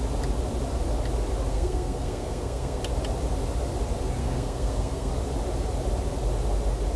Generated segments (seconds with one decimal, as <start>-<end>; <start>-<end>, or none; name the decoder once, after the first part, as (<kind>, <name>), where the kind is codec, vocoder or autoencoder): 1.5-2.8 (codec, SNAC); 4.2-5.1